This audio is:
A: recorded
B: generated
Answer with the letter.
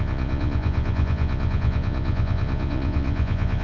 B